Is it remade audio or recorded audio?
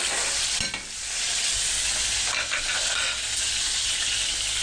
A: recorded